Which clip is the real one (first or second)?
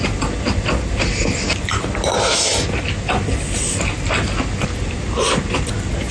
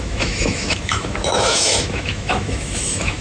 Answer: first